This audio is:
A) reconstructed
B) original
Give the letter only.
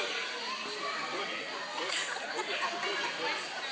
B